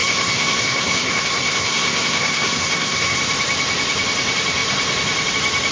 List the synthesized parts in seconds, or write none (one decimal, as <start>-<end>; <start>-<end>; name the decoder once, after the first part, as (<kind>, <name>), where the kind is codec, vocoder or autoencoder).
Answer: 0.0-3.2 (codec, SNAC)